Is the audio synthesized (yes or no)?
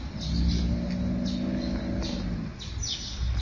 no